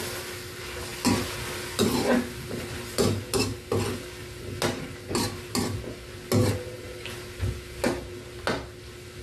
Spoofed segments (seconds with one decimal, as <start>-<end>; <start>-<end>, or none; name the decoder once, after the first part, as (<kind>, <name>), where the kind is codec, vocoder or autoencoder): none